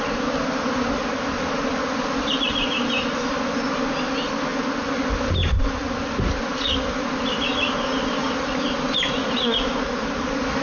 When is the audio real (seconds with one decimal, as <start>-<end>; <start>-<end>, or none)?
0.0-10.6

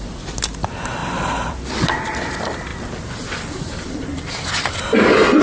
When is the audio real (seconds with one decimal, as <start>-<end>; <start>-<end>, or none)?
0.0-1.0; 1.7-2.7; 4.5-5.4

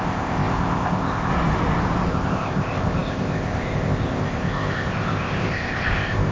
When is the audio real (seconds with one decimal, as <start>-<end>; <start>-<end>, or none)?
1.3-2.1

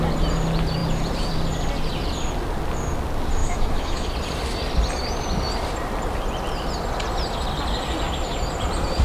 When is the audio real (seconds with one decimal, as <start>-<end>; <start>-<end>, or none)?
0.0-3.4; 4.1-9.0

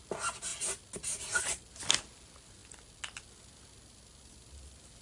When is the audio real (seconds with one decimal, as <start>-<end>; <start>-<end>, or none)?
0.0-5.0

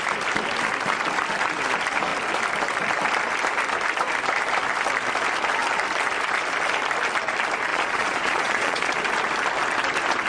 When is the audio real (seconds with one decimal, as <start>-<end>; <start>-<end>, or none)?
0.0-7.7; 8.9-10.3

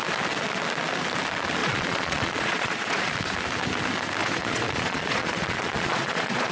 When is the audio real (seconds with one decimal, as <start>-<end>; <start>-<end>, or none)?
0.0-1.6; 3.1-4.2

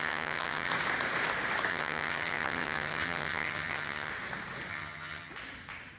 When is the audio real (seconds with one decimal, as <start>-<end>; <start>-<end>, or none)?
0.7-1.7; 4.1-4.7; 5.3-6.0